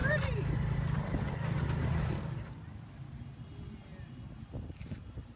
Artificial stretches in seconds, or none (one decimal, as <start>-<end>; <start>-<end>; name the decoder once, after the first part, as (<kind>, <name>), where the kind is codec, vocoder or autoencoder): none